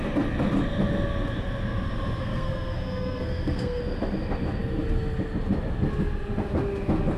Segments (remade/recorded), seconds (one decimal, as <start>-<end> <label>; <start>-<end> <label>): 0.0-2.2 recorded; 2.2-3.8 remade; 3.8-7.2 recorded